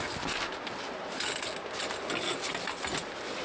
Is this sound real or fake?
real